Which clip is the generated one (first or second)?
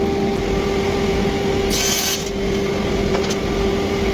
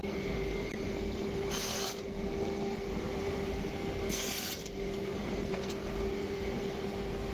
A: second